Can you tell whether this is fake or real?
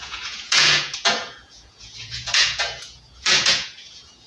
fake